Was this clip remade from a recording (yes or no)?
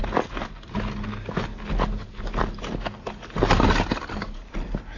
no